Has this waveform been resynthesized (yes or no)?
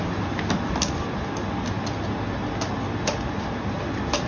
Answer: no